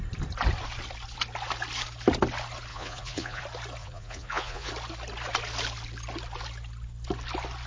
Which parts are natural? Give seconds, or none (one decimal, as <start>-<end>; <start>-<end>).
0.0-2.7; 3.4-3.8; 4.7-7.7